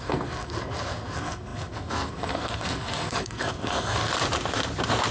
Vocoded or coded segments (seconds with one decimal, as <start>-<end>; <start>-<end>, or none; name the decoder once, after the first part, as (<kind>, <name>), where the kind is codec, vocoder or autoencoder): 0.0-4.1 (codec, SNAC)